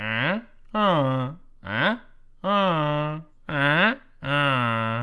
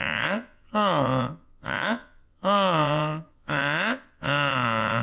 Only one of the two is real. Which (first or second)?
first